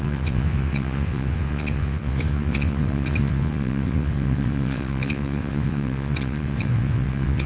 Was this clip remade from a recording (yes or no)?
yes